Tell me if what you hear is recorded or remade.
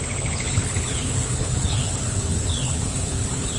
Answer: remade